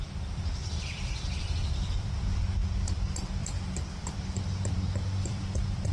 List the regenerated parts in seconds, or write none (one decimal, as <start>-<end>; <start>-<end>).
0.0-2.6; 3.1-5.9